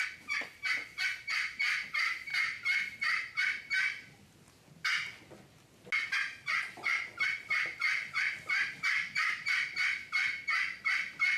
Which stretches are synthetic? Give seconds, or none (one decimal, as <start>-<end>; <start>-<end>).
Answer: none